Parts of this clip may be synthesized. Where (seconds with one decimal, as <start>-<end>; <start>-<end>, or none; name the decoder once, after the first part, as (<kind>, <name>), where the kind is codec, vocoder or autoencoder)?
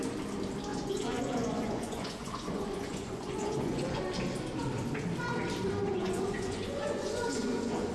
0.7-4.0 (vocoder, Vocos); 5.9-7.9